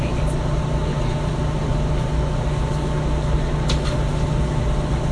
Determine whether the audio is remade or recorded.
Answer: recorded